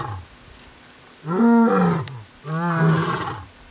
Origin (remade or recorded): recorded